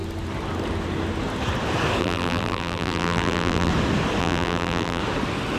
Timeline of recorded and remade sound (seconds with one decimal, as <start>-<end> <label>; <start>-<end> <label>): 0.0-2.0 recorded; 2.0-3.7 remade; 3.7-4.2 recorded; 4.2-5.0 remade; 5.0-5.6 recorded